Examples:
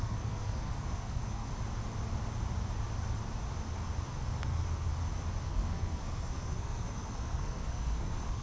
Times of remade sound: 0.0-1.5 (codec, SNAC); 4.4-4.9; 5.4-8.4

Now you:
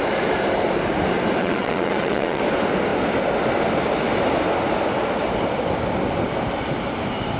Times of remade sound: 1.4-2.4 (vocoder, WaveNeXt)

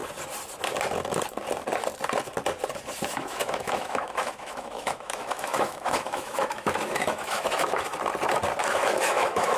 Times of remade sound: 3.1-7.9 (autoencoder, DAC-VAE); 8.6-9.6

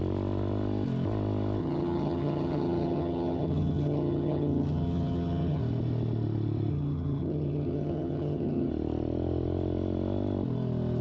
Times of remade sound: 1.6-5.6 (vocoder, HiFi-GAN); 6.7-8.7

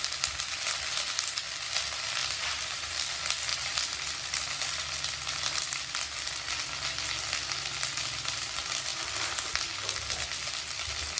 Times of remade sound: 2.2-3.1 (vocoder, BigVGAN v2); 3.5-6.7; 8.9-9.5

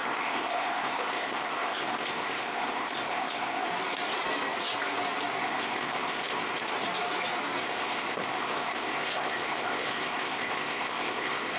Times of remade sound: 0.0-3.7 (codec, ZipCodec); 5.4-6.7; 7.6-11.6

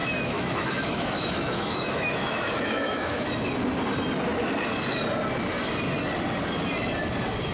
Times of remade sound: 0.0-3.3 (autoencoder, DAC-VAE)

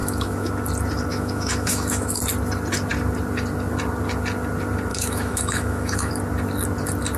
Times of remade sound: 0.0-0.5 (autoencoder, DAC-VAE); 1.1-2.2; 4.9-6.1